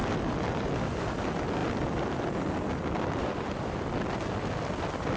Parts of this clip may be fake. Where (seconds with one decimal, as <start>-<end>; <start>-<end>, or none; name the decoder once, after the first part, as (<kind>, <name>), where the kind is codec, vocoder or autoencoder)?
none

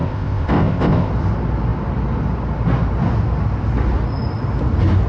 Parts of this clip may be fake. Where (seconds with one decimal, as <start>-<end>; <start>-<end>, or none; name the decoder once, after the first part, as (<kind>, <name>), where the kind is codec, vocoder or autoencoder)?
0.0-1.1 (codec, ZipCodec)

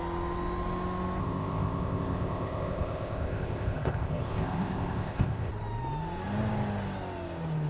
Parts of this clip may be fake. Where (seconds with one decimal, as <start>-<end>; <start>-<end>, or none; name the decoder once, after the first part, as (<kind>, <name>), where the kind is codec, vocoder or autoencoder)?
1.2-5.5 (codec, ZipCodec)

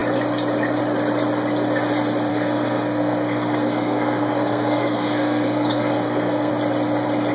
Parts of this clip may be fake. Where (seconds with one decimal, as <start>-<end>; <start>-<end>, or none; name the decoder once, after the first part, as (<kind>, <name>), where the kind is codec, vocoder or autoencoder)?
2.3-6.5 (codec, SNAC)